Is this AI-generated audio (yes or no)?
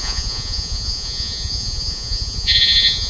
yes